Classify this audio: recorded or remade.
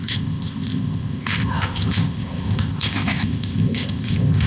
remade